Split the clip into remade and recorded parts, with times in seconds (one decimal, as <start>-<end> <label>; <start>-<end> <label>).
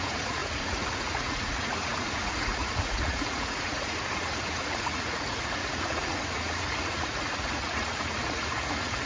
0.0-9.1 remade